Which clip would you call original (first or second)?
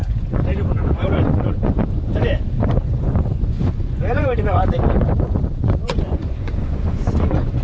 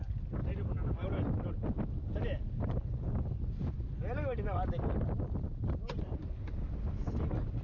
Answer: second